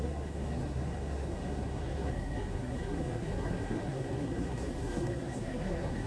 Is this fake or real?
fake